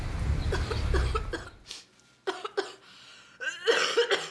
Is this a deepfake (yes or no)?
no